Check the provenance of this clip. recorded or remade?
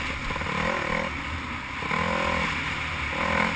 recorded